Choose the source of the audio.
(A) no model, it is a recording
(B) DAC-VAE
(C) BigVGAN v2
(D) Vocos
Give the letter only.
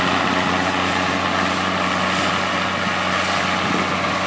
A